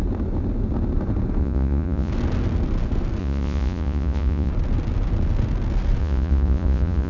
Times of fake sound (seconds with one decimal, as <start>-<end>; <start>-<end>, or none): 1.4-2.1; 3.2-4.5; 6.0-7.1